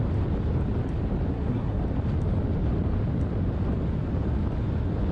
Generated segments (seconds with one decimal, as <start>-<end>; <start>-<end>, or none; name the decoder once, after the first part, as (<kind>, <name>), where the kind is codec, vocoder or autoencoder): 1.3-1.8 (codec, SNAC)